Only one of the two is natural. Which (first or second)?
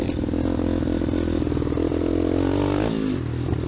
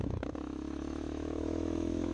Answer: first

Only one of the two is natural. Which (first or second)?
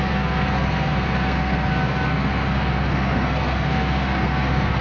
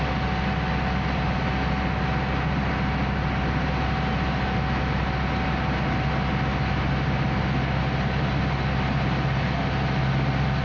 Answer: second